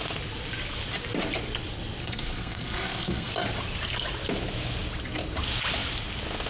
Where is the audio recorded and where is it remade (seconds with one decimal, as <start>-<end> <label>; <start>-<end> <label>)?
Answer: 0.0-2.0 recorded; 2.0-3.3 remade; 3.3-6.5 recorded